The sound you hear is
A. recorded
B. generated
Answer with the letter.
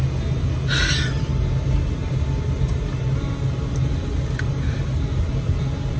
A